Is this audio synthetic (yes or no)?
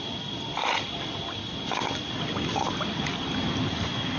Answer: no